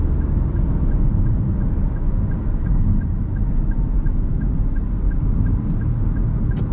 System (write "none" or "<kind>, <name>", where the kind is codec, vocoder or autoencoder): none